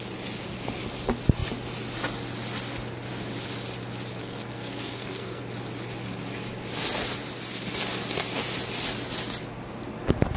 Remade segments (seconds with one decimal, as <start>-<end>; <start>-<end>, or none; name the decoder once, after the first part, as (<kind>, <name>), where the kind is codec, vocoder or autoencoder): 4.2-5.4 (codec, SNAC)